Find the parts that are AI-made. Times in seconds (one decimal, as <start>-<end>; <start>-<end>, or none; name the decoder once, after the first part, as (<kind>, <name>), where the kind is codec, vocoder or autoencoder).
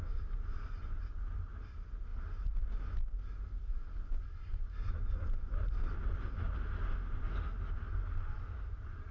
none